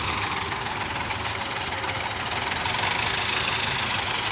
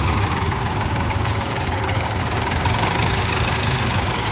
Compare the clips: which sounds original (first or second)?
first